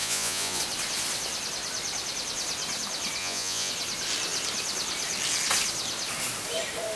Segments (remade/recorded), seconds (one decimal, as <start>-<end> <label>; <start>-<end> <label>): 0.0-0.6 remade; 0.6-3.2 recorded; 3.2-3.7 remade; 3.7-7.0 recorded